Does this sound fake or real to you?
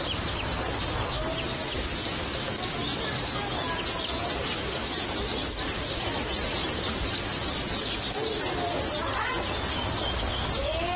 real